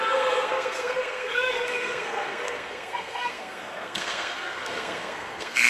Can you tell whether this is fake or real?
fake